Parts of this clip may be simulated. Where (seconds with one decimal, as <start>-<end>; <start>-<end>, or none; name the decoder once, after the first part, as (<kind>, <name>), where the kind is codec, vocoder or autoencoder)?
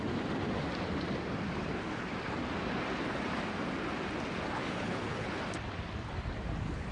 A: 4.6-5.4 (codec, HILCodec)